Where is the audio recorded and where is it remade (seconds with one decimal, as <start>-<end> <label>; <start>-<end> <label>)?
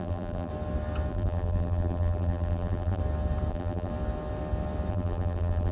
0.0-0.5 remade; 0.5-1.1 recorded; 1.1-3.0 remade; 3.0-3.5 recorded; 3.5-3.9 remade; 3.9-4.9 recorded; 4.9-5.7 remade